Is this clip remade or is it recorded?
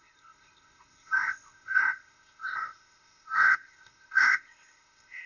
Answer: remade